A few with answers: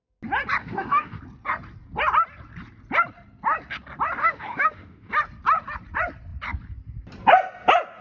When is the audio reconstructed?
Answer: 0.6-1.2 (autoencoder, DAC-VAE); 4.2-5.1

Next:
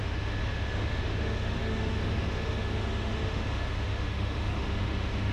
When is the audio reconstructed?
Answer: 0.0-5.3 (autoencoder, DAC-VAE)

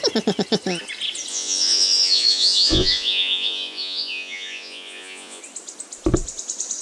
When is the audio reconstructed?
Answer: 1.3-5.4 (vocoder, Vocos)